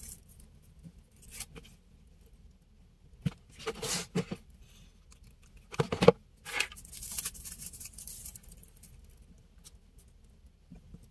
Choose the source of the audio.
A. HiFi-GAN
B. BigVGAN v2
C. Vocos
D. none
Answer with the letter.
D